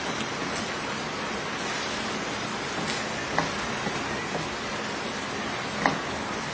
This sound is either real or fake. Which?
real